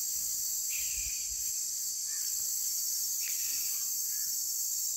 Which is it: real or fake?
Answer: real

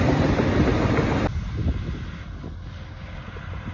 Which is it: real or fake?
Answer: real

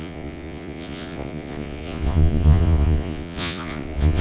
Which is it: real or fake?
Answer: fake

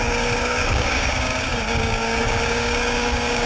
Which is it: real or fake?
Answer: fake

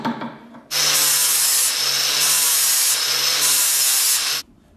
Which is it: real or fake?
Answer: real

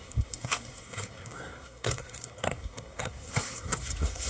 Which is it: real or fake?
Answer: fake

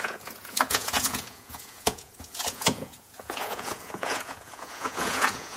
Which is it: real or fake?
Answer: fake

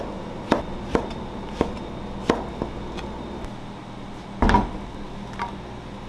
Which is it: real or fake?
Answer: real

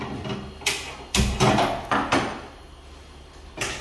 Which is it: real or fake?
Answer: real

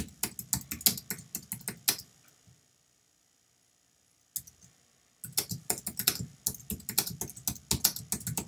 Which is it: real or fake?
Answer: real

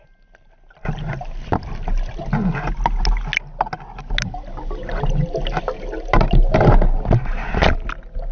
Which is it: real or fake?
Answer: real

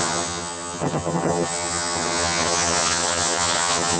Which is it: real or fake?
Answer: fake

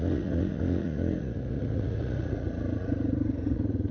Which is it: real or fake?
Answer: fake